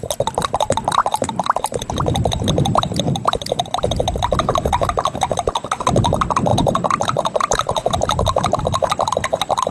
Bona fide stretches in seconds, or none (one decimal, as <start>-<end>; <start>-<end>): 0.0-1.0; 4.0-6.5; 8.6-9.7